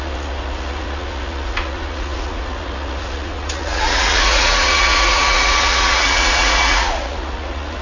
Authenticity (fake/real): fake